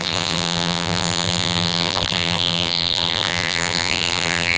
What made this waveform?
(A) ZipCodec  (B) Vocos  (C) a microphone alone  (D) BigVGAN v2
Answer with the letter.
D